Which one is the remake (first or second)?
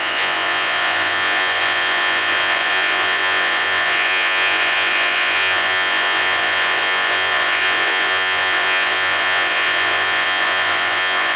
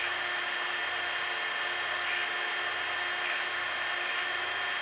first